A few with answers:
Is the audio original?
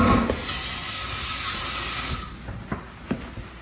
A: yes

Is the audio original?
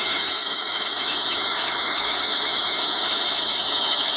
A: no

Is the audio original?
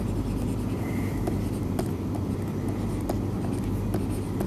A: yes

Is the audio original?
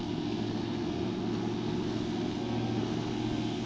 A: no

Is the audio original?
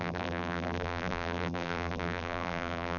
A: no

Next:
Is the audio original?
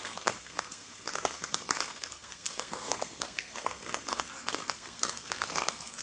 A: no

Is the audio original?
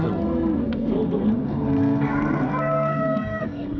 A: no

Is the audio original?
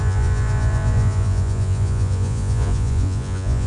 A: no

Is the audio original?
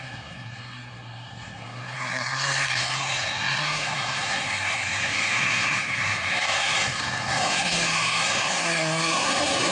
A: no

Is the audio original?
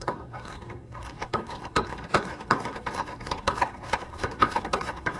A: no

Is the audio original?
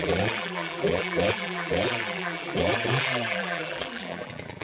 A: no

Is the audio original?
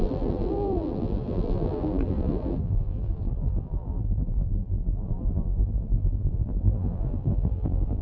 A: no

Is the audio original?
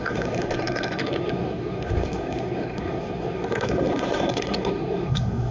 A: no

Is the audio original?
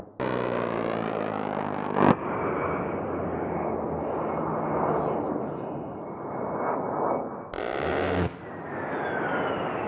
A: yes